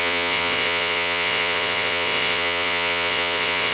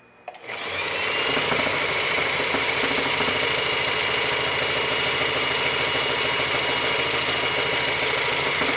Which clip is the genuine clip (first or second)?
second